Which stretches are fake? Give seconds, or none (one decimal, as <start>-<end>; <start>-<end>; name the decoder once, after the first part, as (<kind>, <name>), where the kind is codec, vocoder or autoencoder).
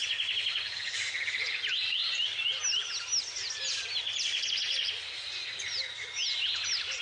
none